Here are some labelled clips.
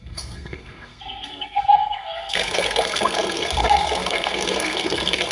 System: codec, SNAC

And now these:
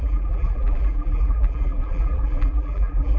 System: vocoder, BigVGAN v2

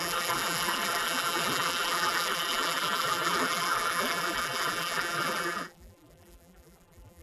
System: vocoder, BigVGAN v2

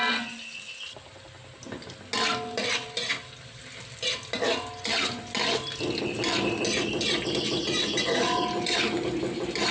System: none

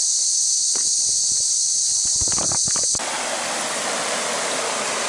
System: none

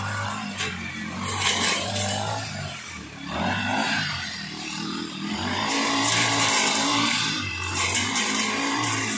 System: vocoder, BigVGAN v2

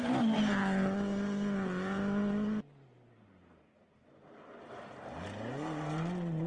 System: none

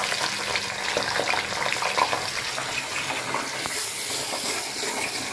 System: none